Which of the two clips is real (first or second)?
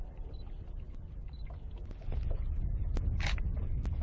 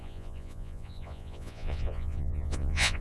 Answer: first